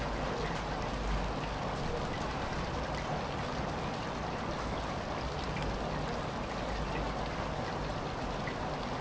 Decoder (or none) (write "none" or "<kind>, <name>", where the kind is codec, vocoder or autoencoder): none